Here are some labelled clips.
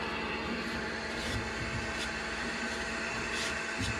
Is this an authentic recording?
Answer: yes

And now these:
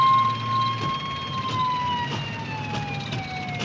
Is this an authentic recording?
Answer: yes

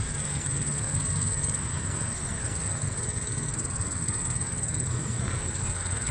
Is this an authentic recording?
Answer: no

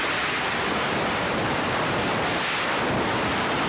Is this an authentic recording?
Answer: yes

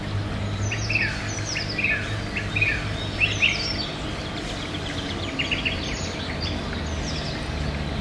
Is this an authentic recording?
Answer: yes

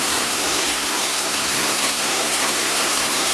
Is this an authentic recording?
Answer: no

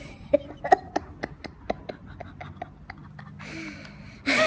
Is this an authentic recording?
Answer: yes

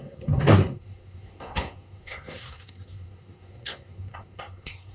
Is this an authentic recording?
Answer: no